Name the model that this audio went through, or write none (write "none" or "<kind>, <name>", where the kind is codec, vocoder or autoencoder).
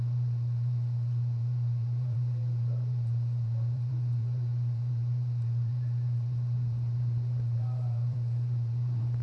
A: vocoder, BigVGAN v2